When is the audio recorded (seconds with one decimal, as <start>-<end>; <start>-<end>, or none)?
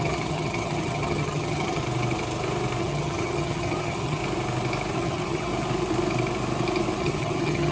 1.8-2.8; 4.2-4.9; 5.5-7.0